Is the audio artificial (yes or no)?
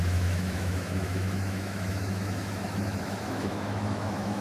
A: yes